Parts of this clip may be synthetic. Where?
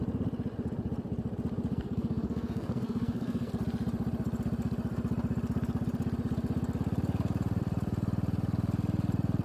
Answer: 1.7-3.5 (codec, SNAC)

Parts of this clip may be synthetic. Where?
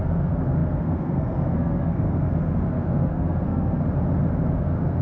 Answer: 0.0-3.8 (codec, SNAC); 4.5-5.0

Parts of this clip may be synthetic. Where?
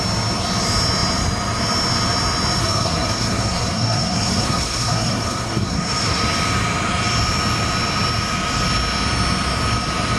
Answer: 2.6-6.2 (codec, SNAC)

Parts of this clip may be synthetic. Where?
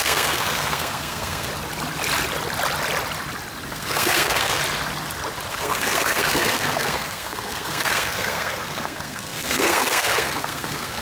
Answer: 0.0-1.5 (codec, SNAC); 3.7-4.6; 5.5-11.0